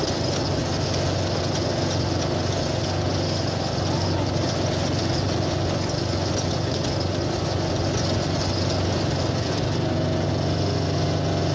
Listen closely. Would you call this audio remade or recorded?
remade